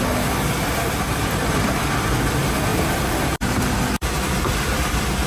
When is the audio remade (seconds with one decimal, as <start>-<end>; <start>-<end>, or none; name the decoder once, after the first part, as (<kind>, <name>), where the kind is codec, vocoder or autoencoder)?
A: 2.7-5.3 (vocoder, BigVGAN v2)